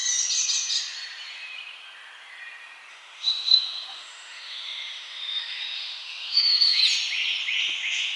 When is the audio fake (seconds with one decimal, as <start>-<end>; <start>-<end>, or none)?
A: 2.9-6.8; 7.6-8.2